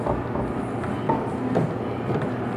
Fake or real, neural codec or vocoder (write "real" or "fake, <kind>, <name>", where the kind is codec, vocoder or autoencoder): real